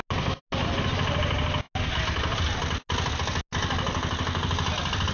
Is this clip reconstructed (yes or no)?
no